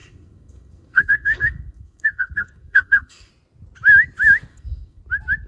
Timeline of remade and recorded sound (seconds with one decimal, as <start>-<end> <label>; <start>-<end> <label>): 0.0-3.3 remade; 3.3-4.5 recorded; 4.5-5.0 remade; 5.0-5.5 recorded